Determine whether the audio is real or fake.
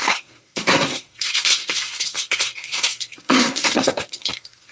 fake